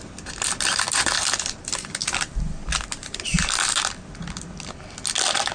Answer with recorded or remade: recorded